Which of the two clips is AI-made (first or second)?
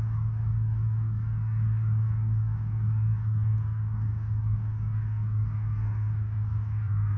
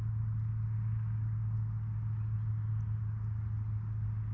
first